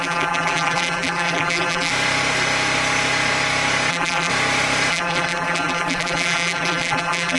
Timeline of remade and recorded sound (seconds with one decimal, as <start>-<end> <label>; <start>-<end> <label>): 0.0-1.9 remade; 1.9-3.9 recorded; 3.9-4.3 remade; 4.3-4.9 recorded; 4.9-7.4 remade

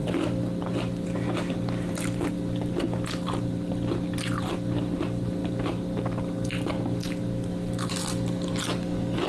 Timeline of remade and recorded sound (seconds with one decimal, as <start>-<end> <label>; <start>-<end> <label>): 0.0-9.3 recorded

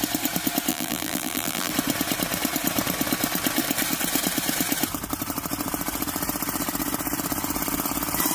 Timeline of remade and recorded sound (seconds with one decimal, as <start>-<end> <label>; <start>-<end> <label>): 0.0-0.7 recorded; 0.7-1.7 remade; 1.7-8.3 recorded

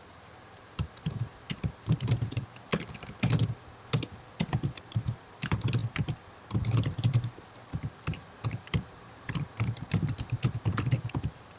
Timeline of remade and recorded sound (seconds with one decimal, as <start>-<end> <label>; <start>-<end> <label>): 0.0-2.7 remade; 2.7-4.4 recorded; 4.4-11.6 remade

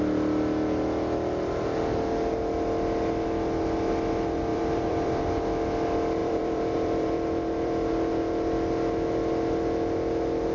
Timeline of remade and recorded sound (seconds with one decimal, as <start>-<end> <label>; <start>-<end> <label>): 0.0-4.5 recorded; 4.5-5.2 remade; 5.2-6.2 recorded; 6.2-7.9 remade; 7.9-10.5 recorded